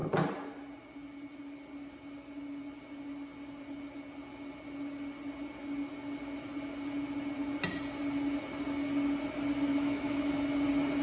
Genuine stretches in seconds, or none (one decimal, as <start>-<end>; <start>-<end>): 0.0-9.7; 10.3-11.0